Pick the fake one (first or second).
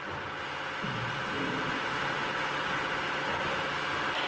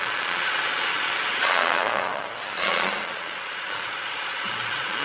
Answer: second